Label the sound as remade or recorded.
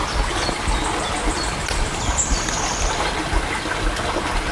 recorded